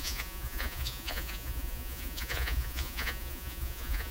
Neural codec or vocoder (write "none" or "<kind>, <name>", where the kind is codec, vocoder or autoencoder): vocoder, Vocos